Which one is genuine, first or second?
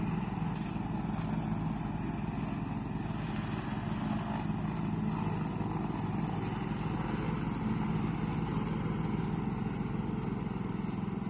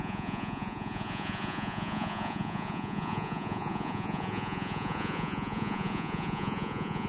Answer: first